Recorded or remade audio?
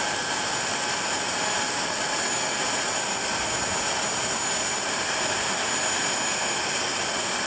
recorded